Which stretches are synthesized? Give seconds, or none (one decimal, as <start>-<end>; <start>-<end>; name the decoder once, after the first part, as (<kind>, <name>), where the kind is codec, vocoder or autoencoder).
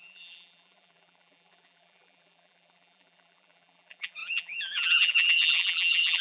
0.0-6.2 (vocoder, BigVGAN v2)